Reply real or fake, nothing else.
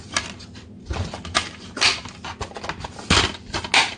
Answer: real